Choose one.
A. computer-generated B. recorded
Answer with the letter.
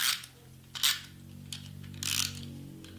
B